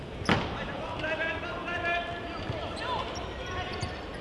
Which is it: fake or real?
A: real